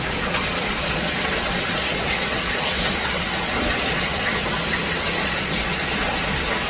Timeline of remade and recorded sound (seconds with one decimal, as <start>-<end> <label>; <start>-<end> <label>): 0.0-4.6 remade; 4.6-5.2 recorded; 5.2-6.7 remade